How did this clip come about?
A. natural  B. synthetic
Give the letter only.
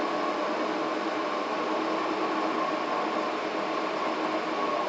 A